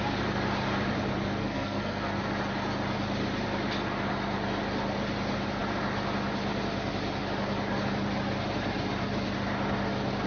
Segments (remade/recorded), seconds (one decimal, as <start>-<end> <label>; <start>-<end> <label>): 0.0-1.4 recorded; 1.4-2.2 remade; 2.2-10.3 recorded